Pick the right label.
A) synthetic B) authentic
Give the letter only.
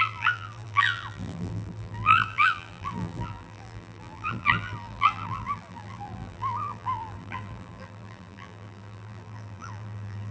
A